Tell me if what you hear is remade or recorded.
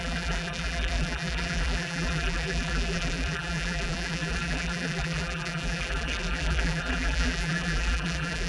remade